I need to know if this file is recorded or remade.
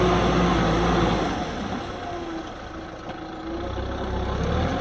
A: recorded